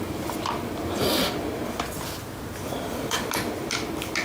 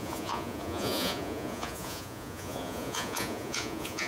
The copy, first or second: second